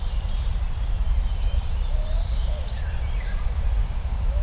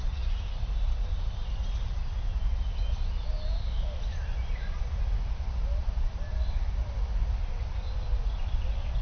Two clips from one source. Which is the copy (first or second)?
first